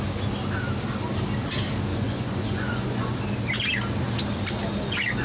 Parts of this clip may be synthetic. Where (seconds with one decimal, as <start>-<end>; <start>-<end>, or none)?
1.9-3.2